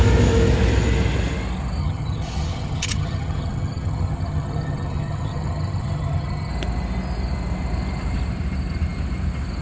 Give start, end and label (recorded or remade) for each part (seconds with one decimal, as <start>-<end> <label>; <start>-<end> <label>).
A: 0.0-1.8 recorded; 1.8-6.5 remade; 6.5-9.6 recorded